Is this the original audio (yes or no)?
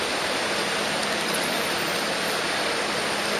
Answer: yes